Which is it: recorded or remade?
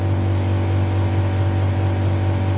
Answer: recorded